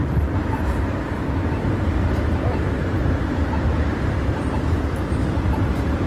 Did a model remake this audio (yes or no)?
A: yes